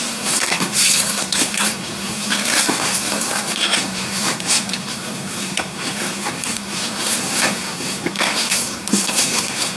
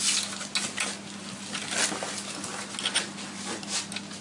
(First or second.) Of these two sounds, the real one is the second